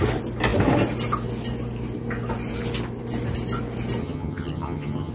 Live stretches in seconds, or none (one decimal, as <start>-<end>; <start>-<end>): 0.0-4.0

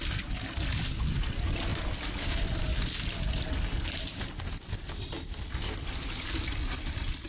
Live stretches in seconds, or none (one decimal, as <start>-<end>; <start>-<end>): 0.0-7.3

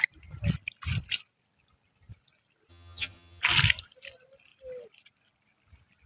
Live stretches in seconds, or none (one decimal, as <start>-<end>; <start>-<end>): 0.0-2.7; 3.4-6.1

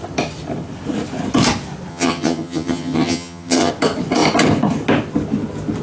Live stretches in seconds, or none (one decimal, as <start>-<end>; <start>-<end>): 0.0-1.9; 3.7-5.8